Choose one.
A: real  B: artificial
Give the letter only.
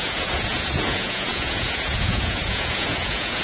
B